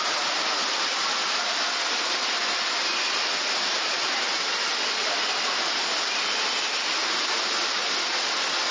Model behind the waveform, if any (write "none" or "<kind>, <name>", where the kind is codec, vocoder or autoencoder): none